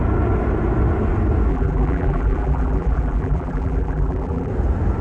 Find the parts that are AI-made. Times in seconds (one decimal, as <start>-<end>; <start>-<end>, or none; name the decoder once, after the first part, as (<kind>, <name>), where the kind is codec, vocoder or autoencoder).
1.5-4.5 (vocoder, BigVGAN v2)